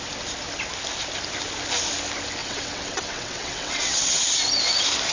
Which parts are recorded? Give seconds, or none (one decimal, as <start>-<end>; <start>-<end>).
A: 0.0-2.4; 4.2-5.1